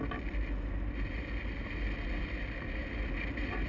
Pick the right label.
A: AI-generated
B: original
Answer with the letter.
B